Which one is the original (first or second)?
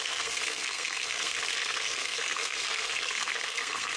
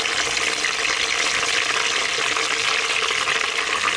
second